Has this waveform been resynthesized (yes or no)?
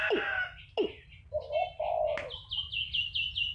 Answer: no